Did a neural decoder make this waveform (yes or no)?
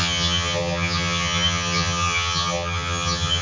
yes